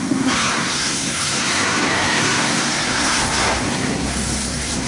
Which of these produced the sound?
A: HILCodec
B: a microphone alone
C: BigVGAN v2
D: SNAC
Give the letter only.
D